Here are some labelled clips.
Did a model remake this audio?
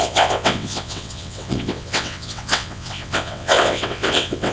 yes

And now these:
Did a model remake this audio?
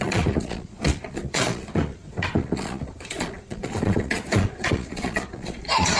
yes